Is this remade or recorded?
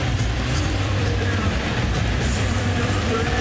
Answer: remade